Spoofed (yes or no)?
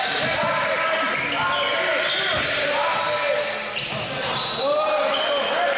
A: no